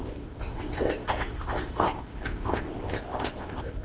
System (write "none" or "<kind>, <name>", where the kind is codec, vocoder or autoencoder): codec, ZipCodec